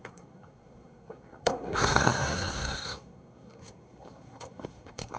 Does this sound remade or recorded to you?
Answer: remade